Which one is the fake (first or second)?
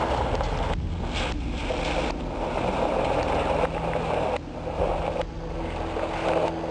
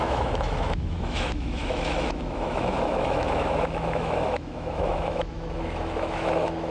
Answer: second